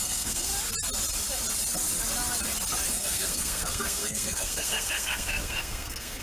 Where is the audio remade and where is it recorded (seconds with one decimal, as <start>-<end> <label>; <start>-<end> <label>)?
0.0-0.5 remade; 0.5-2.9 recorded; 2.9-6.2 remade